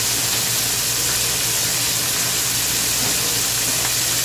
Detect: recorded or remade recorded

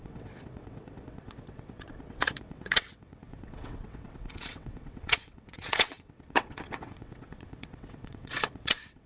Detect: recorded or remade remade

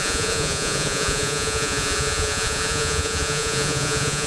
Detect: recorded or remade remade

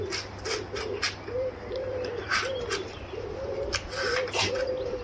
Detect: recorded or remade recorded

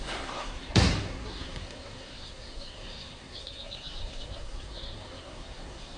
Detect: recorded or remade remade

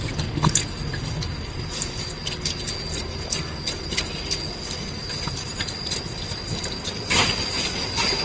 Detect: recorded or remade recorded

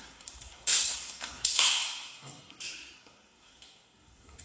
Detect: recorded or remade remade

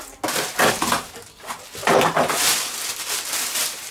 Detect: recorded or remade recorded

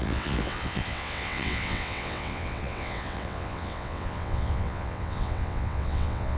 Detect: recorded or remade remade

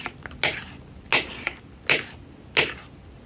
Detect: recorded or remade recorded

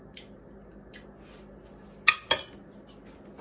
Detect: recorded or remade recorded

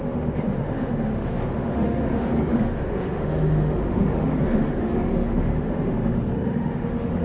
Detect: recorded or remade remade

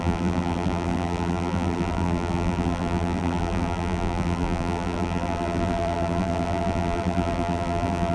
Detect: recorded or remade remade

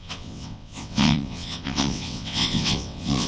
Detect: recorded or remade remade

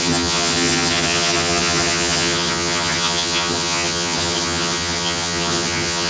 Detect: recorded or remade remade